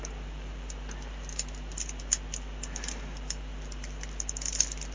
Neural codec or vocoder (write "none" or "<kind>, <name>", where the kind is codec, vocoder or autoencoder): vocoder, BigVGAN v2